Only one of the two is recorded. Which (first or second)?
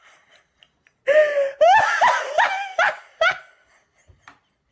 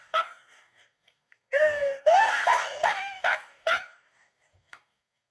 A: first